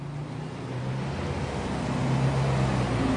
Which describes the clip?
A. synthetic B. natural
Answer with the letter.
B